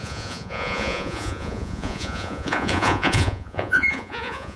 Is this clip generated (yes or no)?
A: yes